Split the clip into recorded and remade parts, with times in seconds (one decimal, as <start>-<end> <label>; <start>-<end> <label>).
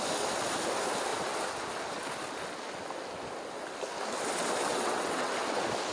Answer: 0.0-4.7 recorded; 4.7-5.3 remade; 5.3-5.9 recorded